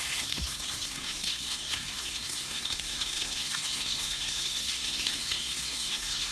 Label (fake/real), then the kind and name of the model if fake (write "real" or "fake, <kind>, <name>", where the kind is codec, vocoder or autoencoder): fake, codec, SNAC